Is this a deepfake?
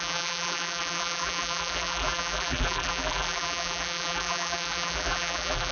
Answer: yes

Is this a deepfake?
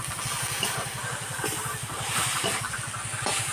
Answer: no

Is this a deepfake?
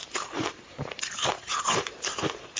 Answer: yes